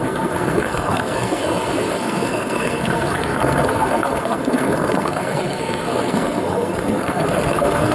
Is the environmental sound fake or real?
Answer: fake